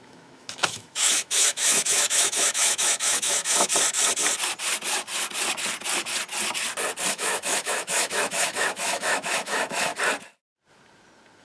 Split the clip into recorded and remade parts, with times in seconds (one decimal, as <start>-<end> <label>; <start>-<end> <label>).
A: 0.0-3.7 remade; 3.7-7.1 recorded; 7.1-9.9 remade; 9.9-11.4 recorded